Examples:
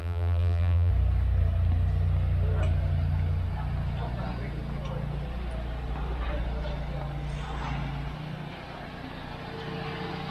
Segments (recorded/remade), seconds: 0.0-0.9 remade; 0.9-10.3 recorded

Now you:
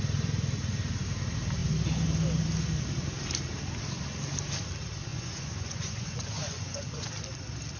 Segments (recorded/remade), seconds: 0.0-5.1 recorded; 5.1-7.1 remade; 7.1-7.8 recorded

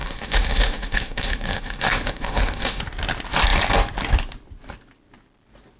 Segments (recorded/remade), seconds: 0.0-2.8 remade; 2.8-5.8 recorded

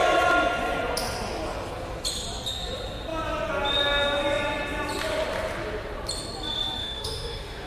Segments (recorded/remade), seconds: 0.0-6.8 recorded; 6.8-7.7 remade

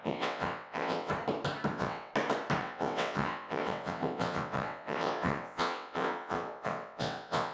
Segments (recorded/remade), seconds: 0.0-1.1 remade; 1.1-1.7 recorded; 1.7-2.1 remade; 2.1-2.6 recorded; 2.6-7.5 remade

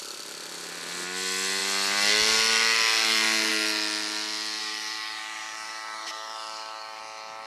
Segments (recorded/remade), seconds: 0.0-4.6 recorded; 4.6-7.0 remade; 7.0-7.5 recorded

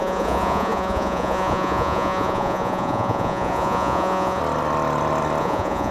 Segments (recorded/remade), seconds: 0.0-4.4 remade; 4.4-5.4 recorded; 5.4-5.9 remade